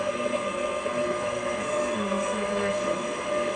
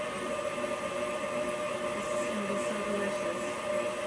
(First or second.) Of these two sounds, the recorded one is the second